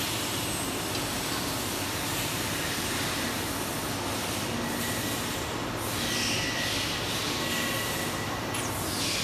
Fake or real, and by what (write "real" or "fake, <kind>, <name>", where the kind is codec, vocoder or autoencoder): real